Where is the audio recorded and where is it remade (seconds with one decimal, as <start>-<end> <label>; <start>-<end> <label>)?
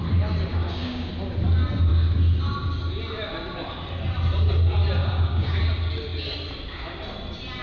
0.0-0.5 recorded; 0.5-1.1 remade; 1.1-5.0 recorded; 5.0-5.6 remade; 5.6-7.6 recorded